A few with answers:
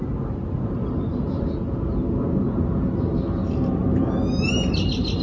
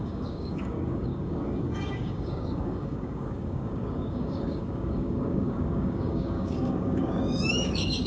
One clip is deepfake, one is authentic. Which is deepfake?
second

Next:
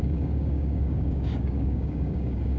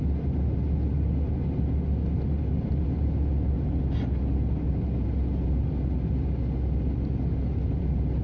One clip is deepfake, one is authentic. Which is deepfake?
first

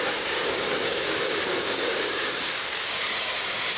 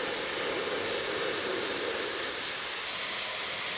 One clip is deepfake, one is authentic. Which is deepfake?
first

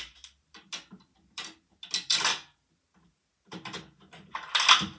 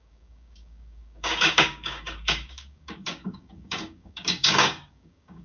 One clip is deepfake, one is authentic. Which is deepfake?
second